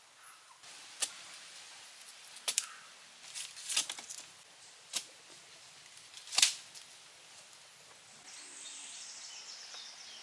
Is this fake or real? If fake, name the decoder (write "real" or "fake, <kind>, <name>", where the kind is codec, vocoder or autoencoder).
real